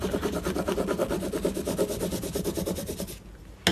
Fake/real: real